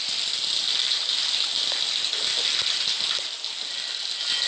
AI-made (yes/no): no